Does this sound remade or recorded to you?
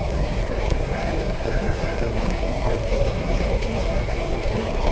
remade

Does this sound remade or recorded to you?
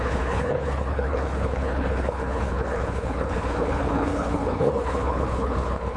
remade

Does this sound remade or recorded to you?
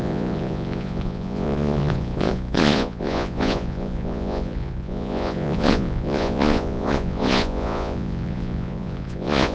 remade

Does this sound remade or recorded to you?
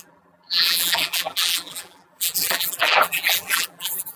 remade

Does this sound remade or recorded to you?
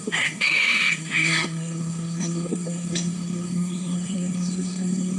remade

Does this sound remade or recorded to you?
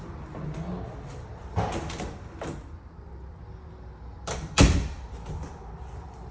recorded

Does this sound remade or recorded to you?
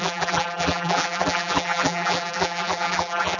remade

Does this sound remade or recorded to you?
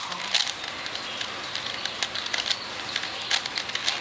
recorded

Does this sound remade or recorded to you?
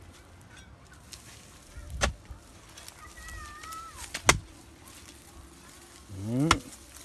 recorded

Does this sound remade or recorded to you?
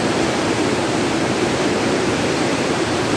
remade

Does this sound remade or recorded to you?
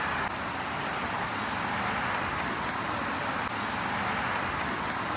recorded